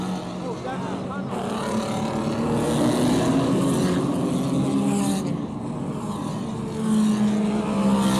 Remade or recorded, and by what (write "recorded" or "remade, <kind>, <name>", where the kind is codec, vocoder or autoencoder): recorded